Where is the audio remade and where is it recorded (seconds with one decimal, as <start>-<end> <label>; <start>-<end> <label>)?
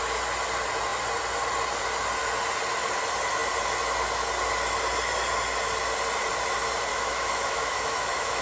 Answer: 0.0-6.9 recorded; 6.9-8.4 remade